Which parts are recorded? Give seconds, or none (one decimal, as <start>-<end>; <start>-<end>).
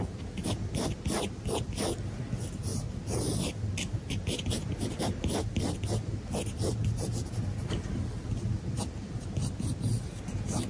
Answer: 0.0-10.7